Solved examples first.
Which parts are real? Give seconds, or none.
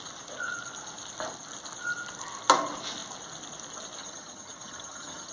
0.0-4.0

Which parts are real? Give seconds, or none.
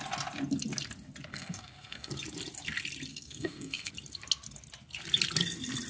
0.0-1.3; 2.1-3.1; 3.9-5.9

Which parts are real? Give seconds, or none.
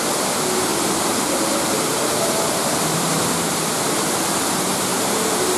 0.0-0.7; 4.1-4.9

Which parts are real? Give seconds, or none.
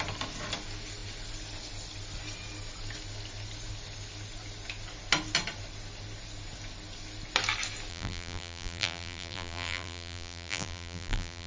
0.0-7.9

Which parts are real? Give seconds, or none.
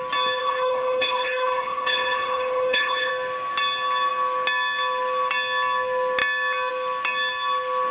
0.0-0.4; 3.1-7.9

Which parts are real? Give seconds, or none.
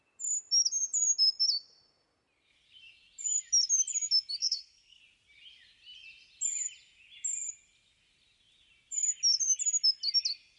0.0-4.4; 5.0-10.6